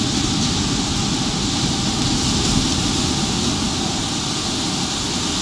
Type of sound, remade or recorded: recorded